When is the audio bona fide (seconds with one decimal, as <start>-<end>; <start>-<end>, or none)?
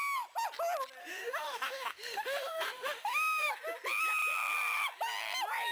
0.0-1.0; 3.5-5.7